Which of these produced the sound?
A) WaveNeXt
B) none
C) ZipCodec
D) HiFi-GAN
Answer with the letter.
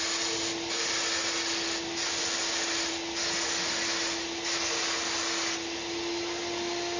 B